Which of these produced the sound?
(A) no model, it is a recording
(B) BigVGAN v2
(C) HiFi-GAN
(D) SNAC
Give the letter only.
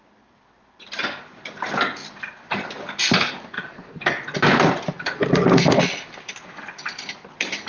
A